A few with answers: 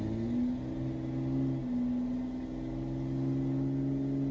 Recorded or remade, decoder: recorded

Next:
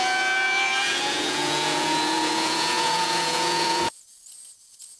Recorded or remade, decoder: remade, vocoder, Vocos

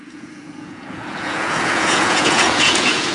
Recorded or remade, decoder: remade, vocoder, Vocos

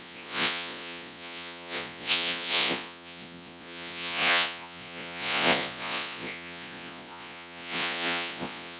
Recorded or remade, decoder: remade, vocoder, Vocos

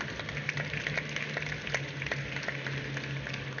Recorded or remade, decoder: recorded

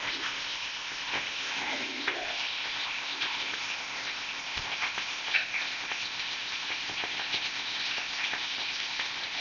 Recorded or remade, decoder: remade, codec, ZipCodec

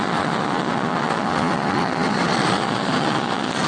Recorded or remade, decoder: remade, vocoder, Vocos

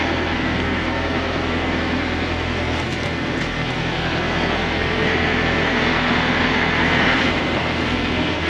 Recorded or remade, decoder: remade, codec, SNAC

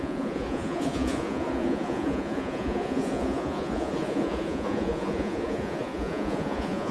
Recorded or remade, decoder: remade, vocoder, Vocos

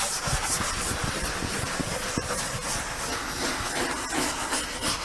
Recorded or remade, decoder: recorded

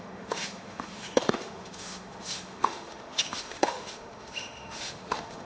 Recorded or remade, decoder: remade, autoencoder, DAC-VAE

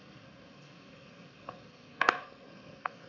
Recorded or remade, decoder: remade, codec, SNAC